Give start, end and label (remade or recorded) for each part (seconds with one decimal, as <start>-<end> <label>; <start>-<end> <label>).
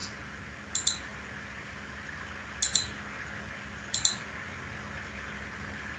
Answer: 0.0-6.0 recorded